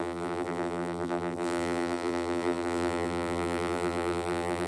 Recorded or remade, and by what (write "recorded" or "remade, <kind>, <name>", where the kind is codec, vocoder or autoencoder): remade, vocoder, BigVGAN v2